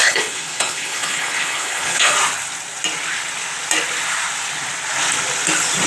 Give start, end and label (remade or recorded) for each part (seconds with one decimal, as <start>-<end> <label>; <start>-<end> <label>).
0.0-2.1 remade; 2.1-5.9 recorded